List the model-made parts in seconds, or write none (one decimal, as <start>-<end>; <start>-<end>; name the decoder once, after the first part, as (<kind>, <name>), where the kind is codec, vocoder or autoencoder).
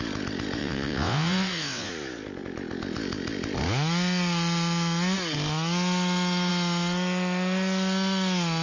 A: 0.6-1.9 (vocoder, WaveNeXt)